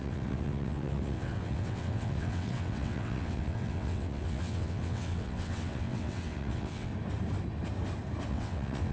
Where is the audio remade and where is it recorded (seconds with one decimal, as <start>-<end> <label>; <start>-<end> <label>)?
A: 0.0-6.9 remade; 6.9-8.3 recorded; 8.3-8.9 remade